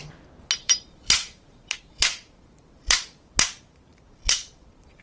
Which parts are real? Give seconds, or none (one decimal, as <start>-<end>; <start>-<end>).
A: 0.0-0.6; 3.0-3.9